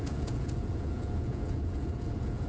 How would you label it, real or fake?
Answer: fake